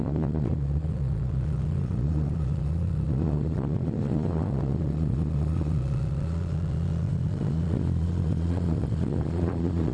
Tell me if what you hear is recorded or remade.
remade